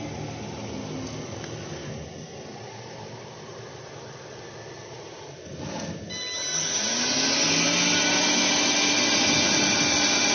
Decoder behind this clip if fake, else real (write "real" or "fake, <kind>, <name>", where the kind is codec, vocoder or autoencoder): real